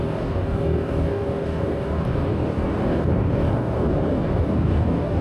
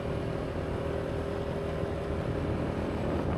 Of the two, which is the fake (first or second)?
first